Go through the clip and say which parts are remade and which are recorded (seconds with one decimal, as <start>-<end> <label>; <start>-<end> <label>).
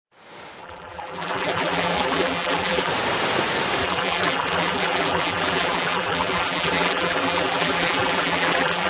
0.0-0.6 recorded; 0.6-2.9 remade; 2.9-3.8 recorded; 3.8-8.9 remade